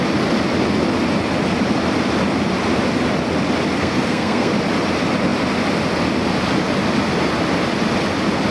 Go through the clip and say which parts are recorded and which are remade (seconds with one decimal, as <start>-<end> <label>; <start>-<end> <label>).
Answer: 0.0-3.8 recorded; 3.8-4.5 remade; 4.5-8.5 recorded